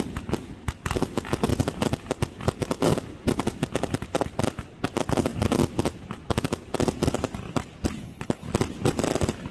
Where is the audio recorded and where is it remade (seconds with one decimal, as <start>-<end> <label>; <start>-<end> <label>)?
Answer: 0.0-8.0 recorded; 8.0-8.5 remade; 8.5-9.5 recorded